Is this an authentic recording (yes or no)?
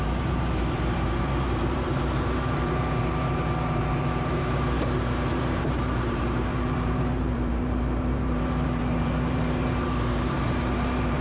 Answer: no